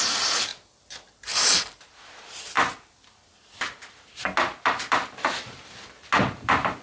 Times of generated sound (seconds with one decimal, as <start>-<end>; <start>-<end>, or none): none

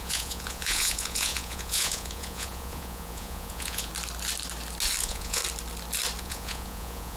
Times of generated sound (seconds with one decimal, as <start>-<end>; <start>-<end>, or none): 0.0-3.9; 5.0-5.4; 6.2-7.2

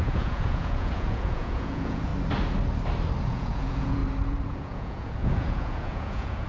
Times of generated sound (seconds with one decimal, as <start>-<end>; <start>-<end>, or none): 0.0-2.1; 3.2-4.0; 4.5-6.5

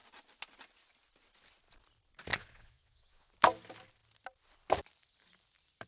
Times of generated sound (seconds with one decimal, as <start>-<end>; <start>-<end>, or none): 2.3-3.3

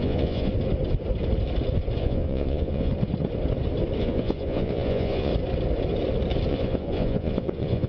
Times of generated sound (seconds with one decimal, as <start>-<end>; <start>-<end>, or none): 0.0-0.5; 2.0-2.9; 4.0-5.3; 6.5-7.9